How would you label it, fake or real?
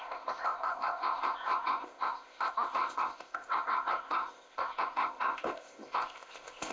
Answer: fake